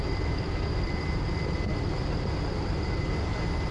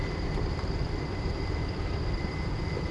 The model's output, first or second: second